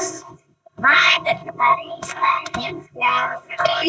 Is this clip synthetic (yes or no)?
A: yes